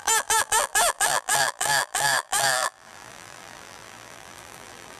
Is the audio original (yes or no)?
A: no